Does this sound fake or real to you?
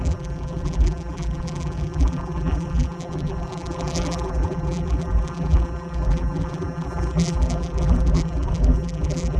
fake